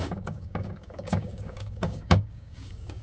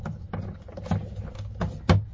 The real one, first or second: second